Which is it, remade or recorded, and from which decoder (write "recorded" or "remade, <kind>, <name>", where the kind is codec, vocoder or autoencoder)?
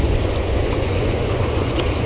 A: remade, vocoder, Vocos